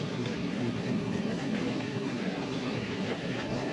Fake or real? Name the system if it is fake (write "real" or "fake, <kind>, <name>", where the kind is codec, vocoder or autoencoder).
fake, codec, SNAC